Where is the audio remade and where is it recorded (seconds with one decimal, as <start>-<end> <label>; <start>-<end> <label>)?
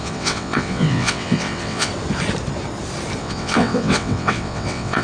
0.0-1.9 remade; 1.9-3.2 recorded; 3.2-5.0 remade